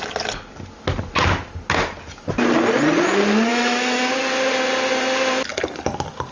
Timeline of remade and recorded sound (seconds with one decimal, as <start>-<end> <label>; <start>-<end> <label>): 0.0-3.5 recorded; 3.5-4.1 remade; 4.1-6.3 recorded